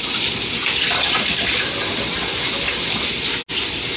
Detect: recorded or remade recorded